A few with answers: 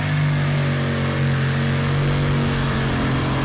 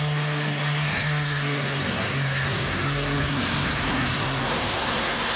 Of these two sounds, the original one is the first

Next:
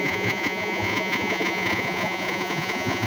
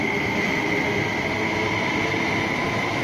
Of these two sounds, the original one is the second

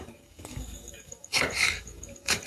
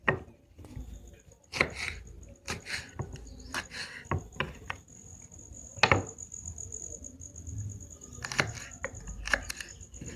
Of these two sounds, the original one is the second